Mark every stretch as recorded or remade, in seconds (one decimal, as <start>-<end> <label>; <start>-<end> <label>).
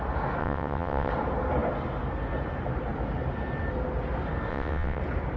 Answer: 0.0-0.4 recorded; 0.4-1.1 remade; 1.1-4.5 recorded; 4.5-5.0 remade; 5.0-5.4 recorded